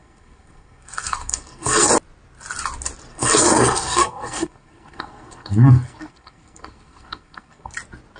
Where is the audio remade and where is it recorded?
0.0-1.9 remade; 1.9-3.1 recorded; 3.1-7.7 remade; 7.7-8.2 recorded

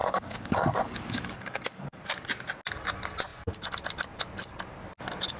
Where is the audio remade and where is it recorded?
0.0-2.0 remade; 2.0-5.4 recorded

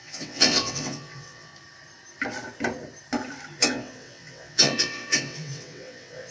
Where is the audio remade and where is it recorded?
0.0-1.5 remade; 1.5-3.6 recorded; 3.6-6.3 remade

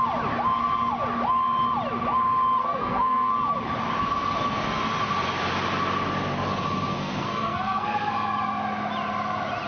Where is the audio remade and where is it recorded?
0.0-2.6 recorded; 2.6-3.3 remade; 3.3-6.9 recorded; 6.9-8.1 remade; 8.1-9.7 recorded

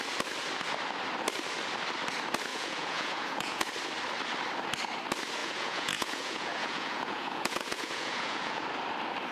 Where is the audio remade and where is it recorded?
0.0-2.5 recorded; 2.5-3.7 remade; 3.7-5.4 recorded; 5.4-8.6 remade; 8.6-9.3 recorded